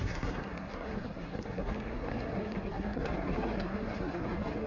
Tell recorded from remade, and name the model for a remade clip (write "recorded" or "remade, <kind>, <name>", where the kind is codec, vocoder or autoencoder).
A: remade, codec, SNAC